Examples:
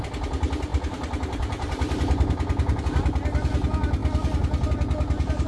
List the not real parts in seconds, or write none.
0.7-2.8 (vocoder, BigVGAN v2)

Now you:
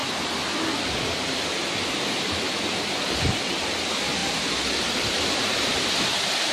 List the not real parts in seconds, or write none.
3.8-4.2 (vocoder, BigVGAN v2); 4.8-6.5

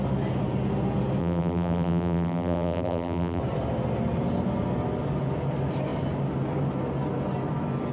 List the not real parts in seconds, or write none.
1.2-3.4 (vocoder, BigVGAN v2)

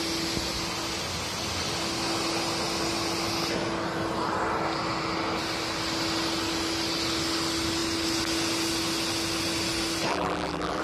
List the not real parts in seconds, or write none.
10.1-10.8 (vocoder, BigVGAN v2)

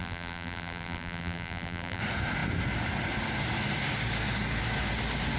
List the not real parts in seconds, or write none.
0.0-2.0 (vocoder, BigVGAN v2)

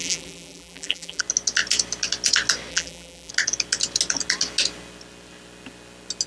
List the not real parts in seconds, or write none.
0.0-1.2 (vocoder, BigVGAN v2); 2.7-3.3

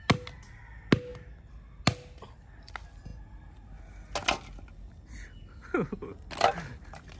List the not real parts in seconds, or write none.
none